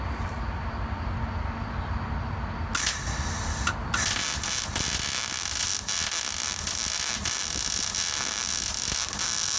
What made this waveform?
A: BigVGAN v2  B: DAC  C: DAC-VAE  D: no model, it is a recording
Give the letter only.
D